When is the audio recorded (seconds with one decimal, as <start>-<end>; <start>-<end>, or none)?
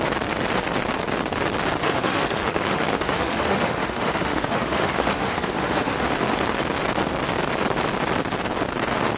0.0-1.8; 6.1-9.2